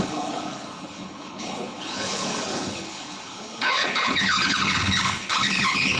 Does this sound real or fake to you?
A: fake